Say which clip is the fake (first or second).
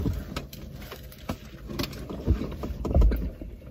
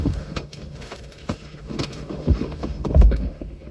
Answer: second